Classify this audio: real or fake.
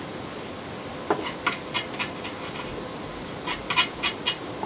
real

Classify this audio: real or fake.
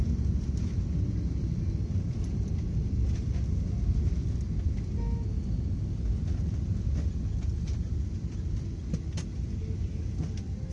real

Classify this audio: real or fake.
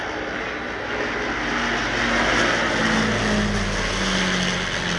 real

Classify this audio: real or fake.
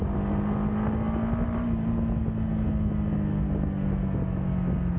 real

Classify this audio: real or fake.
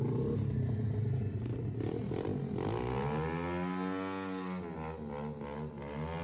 real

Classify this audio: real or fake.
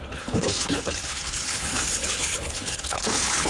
fake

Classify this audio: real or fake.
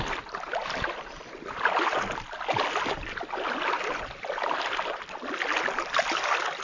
real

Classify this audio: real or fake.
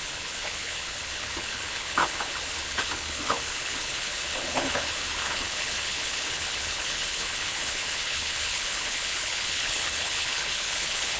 fake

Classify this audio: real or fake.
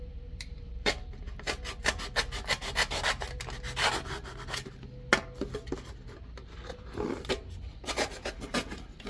real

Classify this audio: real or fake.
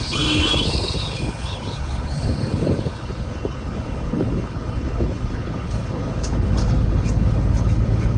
fake